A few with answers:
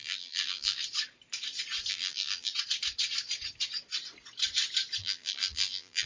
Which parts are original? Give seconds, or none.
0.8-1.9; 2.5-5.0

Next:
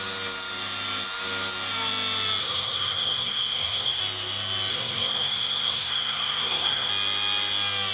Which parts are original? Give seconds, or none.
0.0-2.4; 4.0-4.7; 6.9-7.9

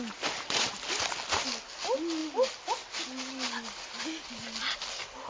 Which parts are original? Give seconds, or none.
0.0-5.3